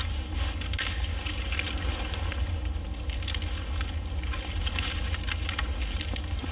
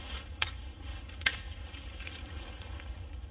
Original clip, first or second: first